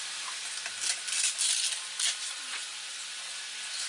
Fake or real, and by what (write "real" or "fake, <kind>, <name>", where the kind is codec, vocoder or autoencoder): real